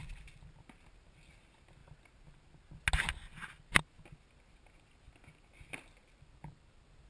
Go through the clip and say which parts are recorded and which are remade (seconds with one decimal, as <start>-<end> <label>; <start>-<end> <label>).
0.0-7.1 recorded